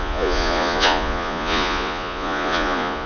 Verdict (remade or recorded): remade